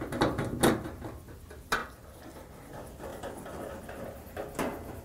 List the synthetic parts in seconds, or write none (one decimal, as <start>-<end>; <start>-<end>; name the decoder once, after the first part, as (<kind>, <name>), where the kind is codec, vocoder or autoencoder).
none